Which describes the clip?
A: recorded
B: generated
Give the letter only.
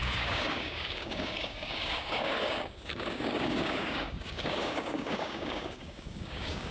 B